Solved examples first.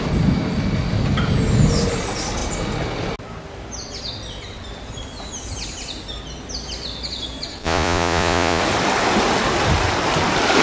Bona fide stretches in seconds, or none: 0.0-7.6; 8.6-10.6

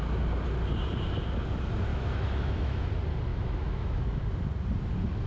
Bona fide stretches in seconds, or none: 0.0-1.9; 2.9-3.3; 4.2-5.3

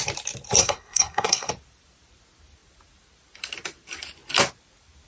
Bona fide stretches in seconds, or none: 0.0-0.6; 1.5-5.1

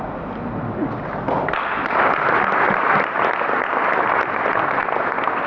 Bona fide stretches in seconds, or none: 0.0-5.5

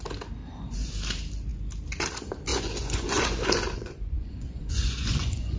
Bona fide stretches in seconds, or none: 0.0-0.4; 0.9-2.5

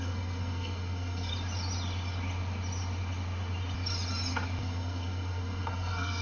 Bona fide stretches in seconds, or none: 1.3-4.6

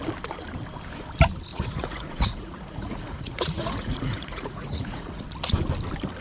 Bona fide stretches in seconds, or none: 0.0-1.5; 5.2-6.2